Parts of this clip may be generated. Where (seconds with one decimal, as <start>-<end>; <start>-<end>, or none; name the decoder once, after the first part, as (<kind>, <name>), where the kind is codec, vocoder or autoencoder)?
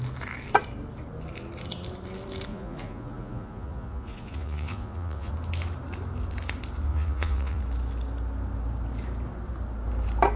2.5-5.3 (vocoder, Vocos); 6.9-7.6